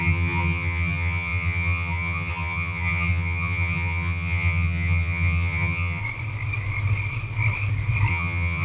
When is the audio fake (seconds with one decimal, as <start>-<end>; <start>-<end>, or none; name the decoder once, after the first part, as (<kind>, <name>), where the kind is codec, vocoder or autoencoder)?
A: 0.0-6.0 (vocoder, HiFi-GAN); 8.1-8.6